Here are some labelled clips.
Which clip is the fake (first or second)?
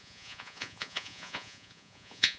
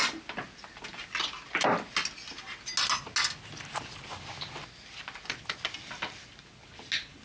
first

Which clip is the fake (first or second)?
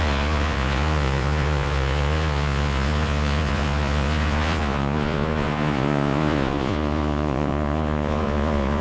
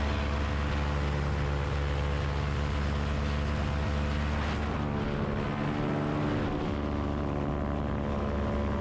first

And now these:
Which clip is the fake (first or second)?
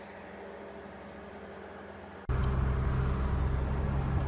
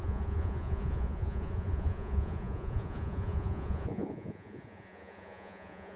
second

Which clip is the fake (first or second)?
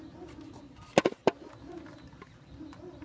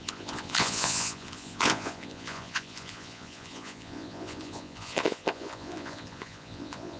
second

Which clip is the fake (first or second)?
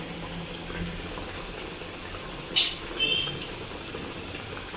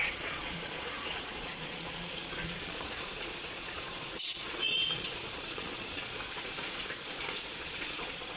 second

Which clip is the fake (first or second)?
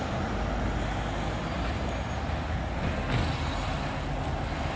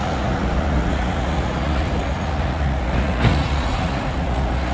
second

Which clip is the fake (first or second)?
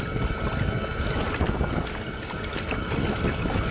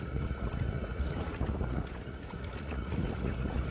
second